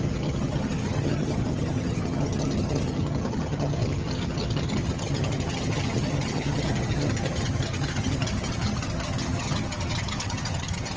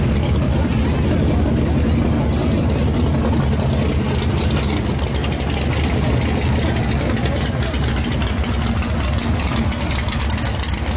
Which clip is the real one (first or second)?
second